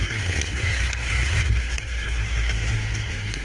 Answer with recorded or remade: remade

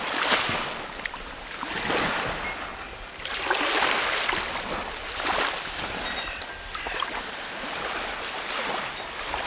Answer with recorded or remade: recorded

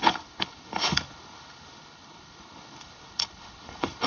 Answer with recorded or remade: remade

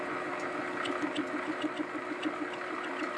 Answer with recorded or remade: recorded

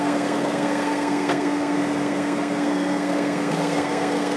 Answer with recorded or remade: remade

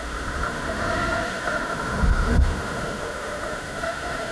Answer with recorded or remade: remade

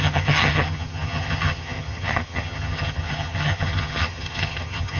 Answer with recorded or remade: remade